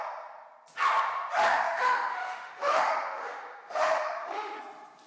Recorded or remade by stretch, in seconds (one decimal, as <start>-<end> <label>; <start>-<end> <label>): 0.0-1.5 recorded; 1.5-4.6 remade; 4.6-5.1 recorded